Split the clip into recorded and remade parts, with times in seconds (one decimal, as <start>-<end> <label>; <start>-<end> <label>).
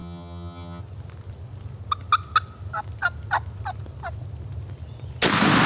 0.0-0.8 remade; 0.8-5.7 recorded